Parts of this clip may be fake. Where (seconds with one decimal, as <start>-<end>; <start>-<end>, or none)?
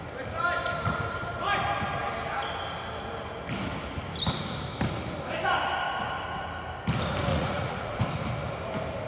7.3-8.0